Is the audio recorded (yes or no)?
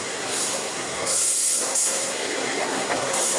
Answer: no